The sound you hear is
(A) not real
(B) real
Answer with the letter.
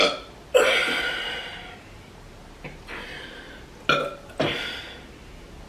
B